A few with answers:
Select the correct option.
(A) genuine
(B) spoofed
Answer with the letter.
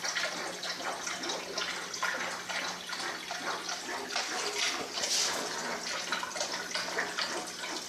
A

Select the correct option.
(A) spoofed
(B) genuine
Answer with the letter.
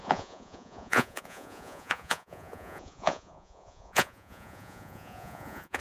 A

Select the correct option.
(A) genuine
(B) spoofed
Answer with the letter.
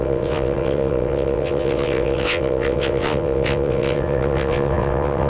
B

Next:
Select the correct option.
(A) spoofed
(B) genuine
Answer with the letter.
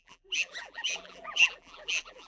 A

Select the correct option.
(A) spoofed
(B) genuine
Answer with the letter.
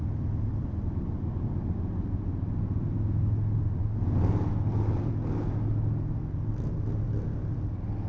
B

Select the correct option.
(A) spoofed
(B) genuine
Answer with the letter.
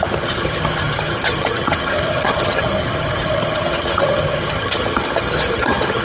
A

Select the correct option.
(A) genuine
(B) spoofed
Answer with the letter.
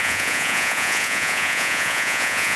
B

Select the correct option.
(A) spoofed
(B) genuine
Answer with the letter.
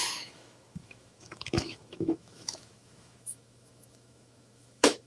A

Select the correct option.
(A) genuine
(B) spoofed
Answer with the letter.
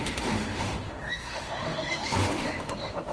B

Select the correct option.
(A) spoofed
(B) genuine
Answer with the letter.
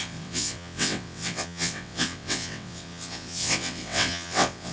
A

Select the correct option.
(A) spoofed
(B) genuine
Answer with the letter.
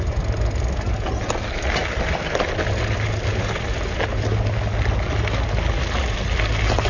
B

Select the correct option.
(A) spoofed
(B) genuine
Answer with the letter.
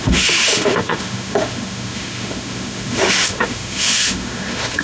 A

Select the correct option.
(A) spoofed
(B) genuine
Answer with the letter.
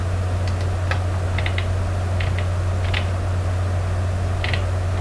B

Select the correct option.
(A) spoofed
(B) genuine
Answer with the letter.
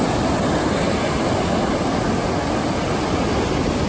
B